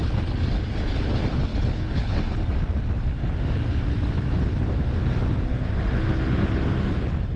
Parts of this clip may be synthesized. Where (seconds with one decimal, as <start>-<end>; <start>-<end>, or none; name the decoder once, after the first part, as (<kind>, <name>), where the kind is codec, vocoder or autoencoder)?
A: 1.5-2.2 (codec, HILCodec)